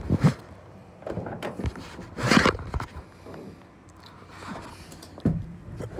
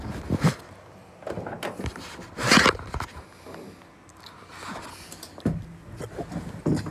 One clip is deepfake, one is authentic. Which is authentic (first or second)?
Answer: second